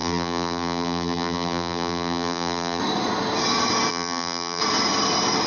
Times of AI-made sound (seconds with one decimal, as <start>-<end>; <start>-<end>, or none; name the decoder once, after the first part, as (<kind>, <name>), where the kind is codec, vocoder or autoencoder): 0.0-2.8 (vocoder, BigVGAN v2); 3.9-4.6